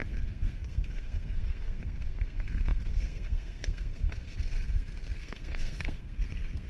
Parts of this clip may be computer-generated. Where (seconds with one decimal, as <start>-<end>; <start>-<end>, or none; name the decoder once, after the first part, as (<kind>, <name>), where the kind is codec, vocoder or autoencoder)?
0.0-6.7 (codec, SNAC)